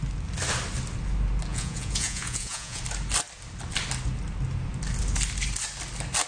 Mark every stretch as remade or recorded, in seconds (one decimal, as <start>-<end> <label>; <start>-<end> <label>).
0.0-1.5 recorded; 1.5-2.8 remade; 2.8-6.3 recorded